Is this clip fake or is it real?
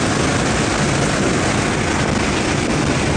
real